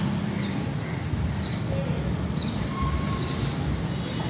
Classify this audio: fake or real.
real